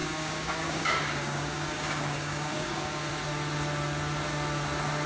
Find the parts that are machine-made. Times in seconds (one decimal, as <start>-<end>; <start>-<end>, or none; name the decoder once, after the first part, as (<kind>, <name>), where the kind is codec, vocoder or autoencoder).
0.0-3.1 (codec, DAC)